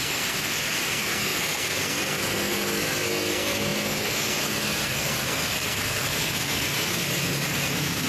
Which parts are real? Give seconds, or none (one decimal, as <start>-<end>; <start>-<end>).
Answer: none